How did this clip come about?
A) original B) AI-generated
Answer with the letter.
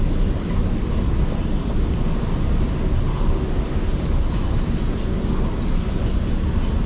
A